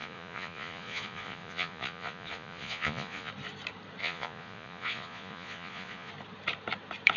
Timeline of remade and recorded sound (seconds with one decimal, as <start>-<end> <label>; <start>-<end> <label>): 0.0-3.3 remade; 3.3-4.0 recorded; 4.0-6.1 remade; 6.1-7.2 recorded